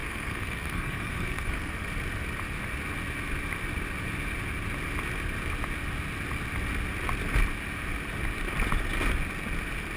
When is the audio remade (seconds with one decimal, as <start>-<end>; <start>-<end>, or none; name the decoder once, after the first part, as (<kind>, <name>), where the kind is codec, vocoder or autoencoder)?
0.0-1.7 (codec, SNAC)